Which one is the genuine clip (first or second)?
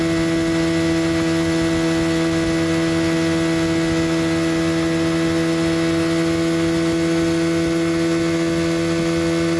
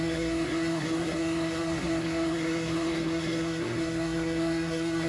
first